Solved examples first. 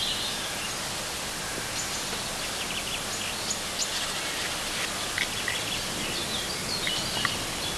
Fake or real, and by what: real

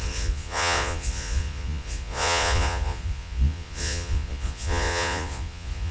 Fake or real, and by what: fake, vocoder, Vocos